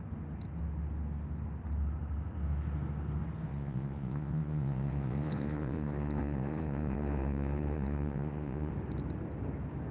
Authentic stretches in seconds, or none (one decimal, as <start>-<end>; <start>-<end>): 0.0-3.5; 8.7-9.9